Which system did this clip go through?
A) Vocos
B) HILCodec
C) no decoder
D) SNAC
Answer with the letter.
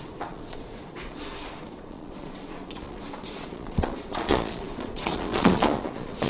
A